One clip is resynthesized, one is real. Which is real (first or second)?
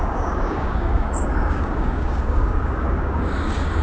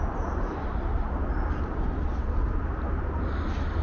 second